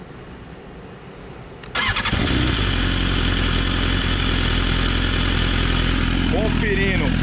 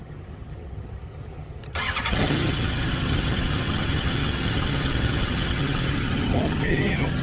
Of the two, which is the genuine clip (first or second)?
first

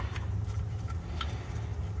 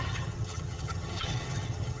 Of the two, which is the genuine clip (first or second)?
first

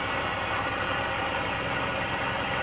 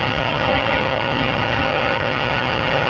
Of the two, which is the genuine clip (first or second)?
first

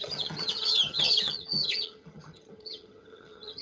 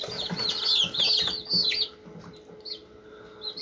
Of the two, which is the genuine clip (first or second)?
second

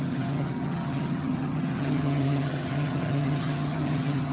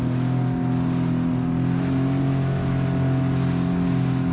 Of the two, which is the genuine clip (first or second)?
second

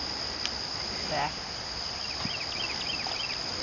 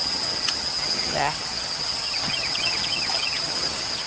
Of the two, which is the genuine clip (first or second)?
first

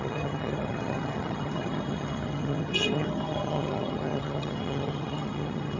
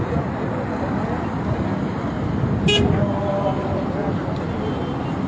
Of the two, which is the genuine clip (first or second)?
second